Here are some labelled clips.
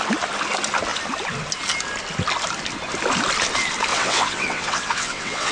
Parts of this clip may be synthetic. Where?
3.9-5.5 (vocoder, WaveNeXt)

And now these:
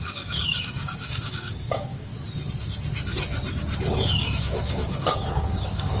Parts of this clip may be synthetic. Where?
0.0-2.1 (codec, DAC); 4.4-6.0

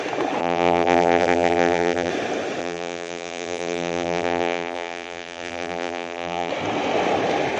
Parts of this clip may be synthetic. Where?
0.4-2.1 (vocoder, BigVGAN v2); 2.6-6.5

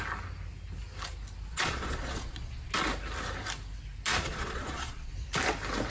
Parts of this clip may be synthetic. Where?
1.5-2.7 (vocoder, Vocos); 4.1-5.1

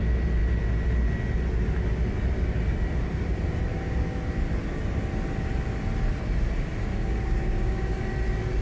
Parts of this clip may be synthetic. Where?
6.9-8.0 (codec, DAC)